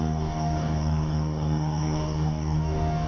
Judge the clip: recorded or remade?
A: remade